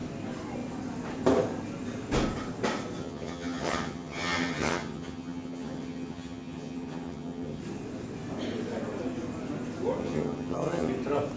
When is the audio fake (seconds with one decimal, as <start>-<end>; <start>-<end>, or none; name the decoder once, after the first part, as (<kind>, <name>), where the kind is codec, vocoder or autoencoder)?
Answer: 3.0-7.6 (vocoder, HiFi-GAN); 10.0-10.9